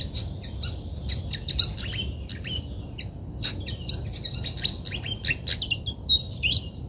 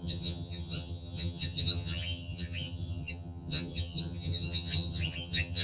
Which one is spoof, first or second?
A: second